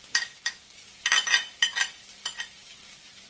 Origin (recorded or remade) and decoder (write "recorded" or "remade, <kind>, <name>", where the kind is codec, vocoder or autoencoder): recorded